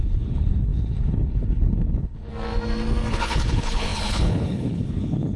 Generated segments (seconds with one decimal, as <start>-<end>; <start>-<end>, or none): 0.0-2.3; 3.1-5.4